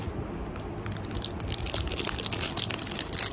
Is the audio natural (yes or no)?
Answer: yes